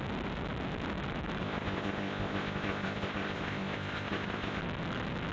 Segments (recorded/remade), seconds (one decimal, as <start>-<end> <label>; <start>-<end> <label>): 0.0-1.4 recorded; 1.4-4.6 remade; 4.6-5.3 recorded